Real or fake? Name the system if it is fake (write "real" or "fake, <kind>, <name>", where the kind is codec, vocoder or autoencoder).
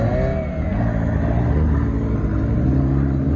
real